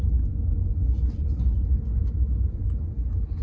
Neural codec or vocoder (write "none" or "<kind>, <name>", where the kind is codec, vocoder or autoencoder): none